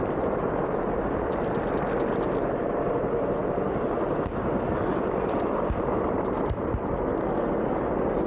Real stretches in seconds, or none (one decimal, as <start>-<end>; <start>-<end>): 0.0-8.3